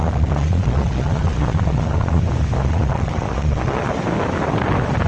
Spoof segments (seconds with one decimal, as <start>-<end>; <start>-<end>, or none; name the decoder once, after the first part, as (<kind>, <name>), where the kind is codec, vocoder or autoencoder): 0.0-2.2 (vocoder, Vocos); 2.6-3.9